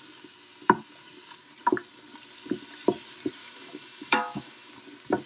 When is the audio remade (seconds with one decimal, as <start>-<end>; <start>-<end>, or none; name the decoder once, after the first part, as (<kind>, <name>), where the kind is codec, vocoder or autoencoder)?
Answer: 3.4-4.7 (autoencoder, DAC-VAE)